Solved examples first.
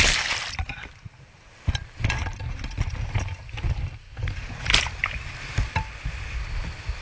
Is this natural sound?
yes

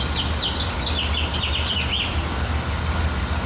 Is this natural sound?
yes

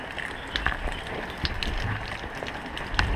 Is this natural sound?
yes